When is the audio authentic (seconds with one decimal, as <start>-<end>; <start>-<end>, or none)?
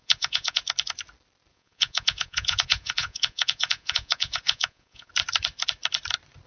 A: 0.6-1.5; 5.1-6.5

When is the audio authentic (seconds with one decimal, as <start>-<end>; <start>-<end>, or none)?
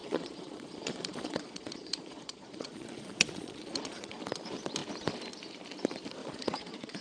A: 4.2-6.2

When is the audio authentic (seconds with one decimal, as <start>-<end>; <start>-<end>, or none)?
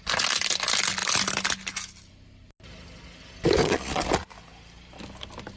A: 0.0-3.6; 4.1-5.6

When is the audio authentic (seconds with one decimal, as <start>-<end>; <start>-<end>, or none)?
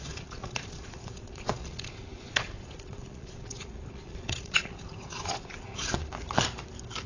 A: 6.1-7.1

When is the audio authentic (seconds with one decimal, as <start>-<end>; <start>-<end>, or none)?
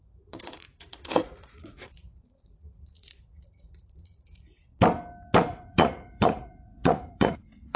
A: 4.6-5.5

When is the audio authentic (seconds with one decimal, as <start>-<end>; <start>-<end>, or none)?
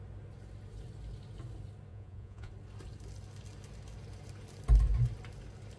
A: 0.0-1.9; 2.5-5.8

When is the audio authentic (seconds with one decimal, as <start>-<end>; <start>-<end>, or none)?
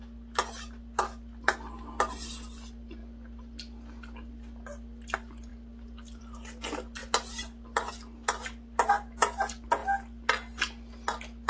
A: 0.0-11.5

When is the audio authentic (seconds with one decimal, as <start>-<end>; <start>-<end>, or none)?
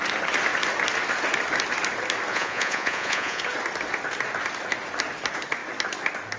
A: 0.0-2.3; 3.4-6.4